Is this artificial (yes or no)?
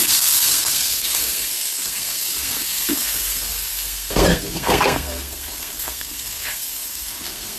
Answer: yes